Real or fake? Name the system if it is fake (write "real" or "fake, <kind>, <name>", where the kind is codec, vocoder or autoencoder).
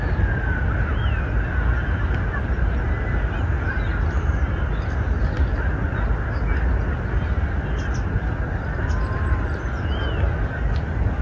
real